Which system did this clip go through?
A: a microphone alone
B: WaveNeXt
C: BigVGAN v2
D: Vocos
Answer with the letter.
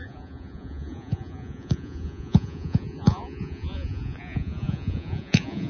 D